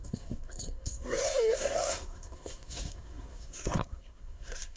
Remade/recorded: remade